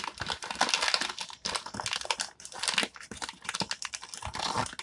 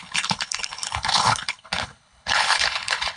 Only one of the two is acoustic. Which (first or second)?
first